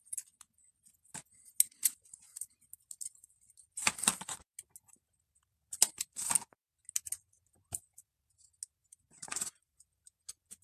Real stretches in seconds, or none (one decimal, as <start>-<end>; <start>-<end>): 0.0-8.8; 9.9-10.6